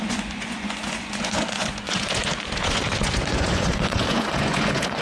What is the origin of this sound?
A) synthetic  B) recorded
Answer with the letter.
A